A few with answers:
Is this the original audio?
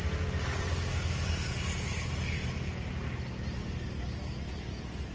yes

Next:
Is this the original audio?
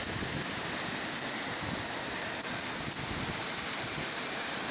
yes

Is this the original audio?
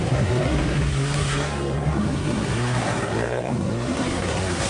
no